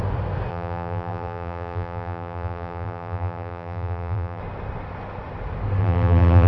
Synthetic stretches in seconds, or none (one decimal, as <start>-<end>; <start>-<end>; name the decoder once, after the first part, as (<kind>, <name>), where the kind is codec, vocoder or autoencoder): 0.5-4.4 (vocoder, BigVGAN v2); 5.8-6.5